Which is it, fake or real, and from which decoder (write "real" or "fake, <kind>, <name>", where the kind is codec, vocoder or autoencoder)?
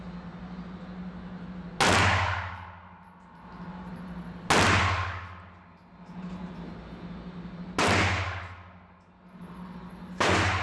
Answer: real